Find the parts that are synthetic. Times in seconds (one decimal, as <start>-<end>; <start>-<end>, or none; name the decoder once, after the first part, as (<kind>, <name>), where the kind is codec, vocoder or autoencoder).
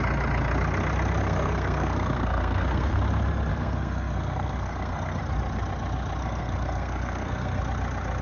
1.2-3.0 (codec, SNAC); 3.5-5.2; 6.2-7.6